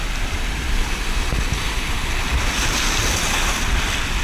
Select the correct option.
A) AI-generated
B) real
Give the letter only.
B